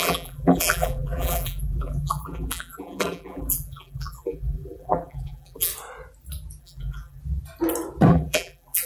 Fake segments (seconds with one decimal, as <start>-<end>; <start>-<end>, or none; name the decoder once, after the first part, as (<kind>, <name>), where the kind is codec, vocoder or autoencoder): 0.0-5.7 (vocoder, BigVGAN v2); 6.6-7.2; 8.1-8.9